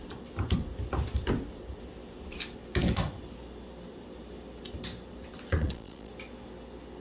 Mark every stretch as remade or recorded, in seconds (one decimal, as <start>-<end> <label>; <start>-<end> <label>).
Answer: 0.0-5.5 recorded; 5.5-6.1 remade; 6.1-7.0 recorded